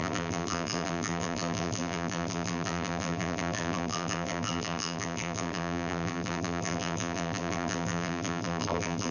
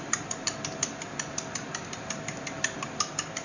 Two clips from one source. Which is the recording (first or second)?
second